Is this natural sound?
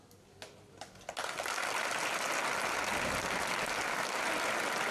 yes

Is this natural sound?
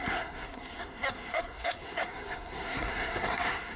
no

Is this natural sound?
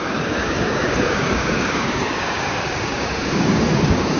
no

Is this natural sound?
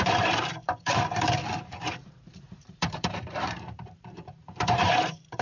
no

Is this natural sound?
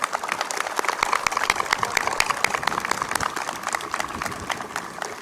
yes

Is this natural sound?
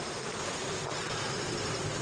yes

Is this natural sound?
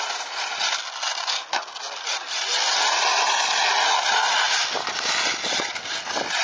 yes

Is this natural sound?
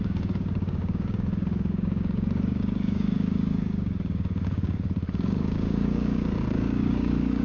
no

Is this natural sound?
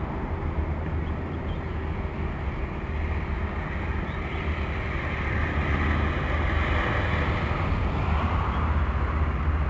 yes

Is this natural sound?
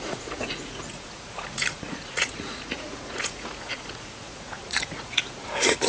no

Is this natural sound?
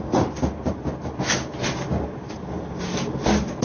yes